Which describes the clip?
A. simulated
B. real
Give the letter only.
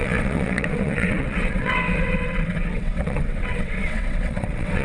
A